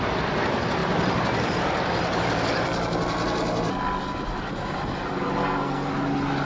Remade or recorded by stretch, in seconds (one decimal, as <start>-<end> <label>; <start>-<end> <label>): 0.0-5.4 recorded; 5.4-5.9 remade; 5.9-6.5 recorded